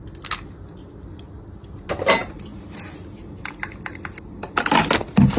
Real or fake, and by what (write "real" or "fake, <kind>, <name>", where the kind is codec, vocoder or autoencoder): real